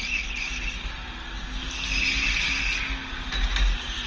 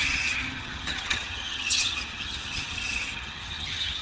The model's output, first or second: second